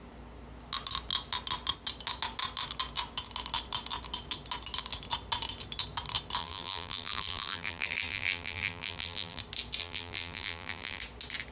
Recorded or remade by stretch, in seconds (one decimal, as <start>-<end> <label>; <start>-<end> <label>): 0.0-6.4 recorded; 6.4-9.4 remade; 9.4-9.8 recorded; 9.8-11.0 remade; 11.0-11.5 recorded